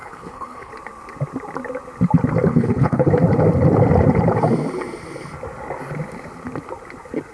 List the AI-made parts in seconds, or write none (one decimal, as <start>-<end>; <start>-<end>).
0.0-0.7; 2.5-3.1